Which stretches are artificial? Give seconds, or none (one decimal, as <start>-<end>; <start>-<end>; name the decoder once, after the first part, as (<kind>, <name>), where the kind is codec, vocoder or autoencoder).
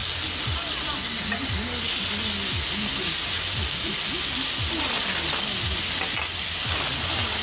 none